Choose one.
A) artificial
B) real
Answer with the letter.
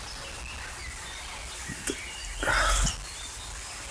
B